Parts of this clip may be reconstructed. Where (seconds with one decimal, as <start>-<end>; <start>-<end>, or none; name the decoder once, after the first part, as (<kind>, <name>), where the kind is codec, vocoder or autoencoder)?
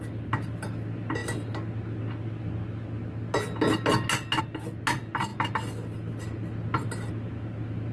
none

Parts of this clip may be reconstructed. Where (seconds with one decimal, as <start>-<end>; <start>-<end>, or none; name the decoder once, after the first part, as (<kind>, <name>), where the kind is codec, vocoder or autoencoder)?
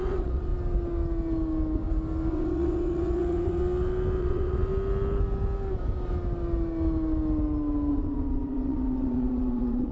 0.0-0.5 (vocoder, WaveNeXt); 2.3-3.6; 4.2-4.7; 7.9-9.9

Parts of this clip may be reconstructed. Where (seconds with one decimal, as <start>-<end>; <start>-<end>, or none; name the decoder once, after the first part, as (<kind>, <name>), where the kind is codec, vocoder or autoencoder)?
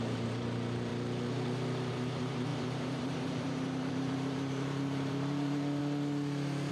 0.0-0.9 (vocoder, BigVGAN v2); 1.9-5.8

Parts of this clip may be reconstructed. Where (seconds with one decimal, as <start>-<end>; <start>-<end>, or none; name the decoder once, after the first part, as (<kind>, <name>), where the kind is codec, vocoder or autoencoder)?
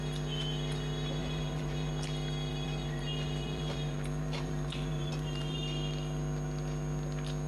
1.2-1.9 (vocoder, BigVGAN v2); 2.5-5.6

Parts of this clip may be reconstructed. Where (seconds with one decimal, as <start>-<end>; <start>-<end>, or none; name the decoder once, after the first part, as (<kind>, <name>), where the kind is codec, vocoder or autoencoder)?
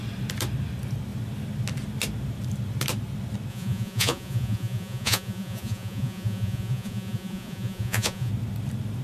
3.5-8.3 (vocoder, Vocos)